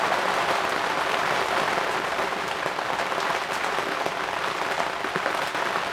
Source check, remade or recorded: recorded